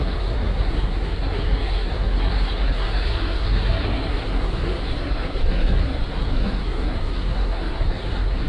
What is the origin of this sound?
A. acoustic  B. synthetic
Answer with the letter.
B